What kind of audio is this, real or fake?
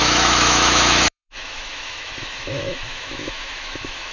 fake